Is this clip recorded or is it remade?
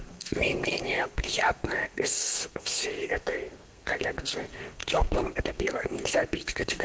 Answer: remade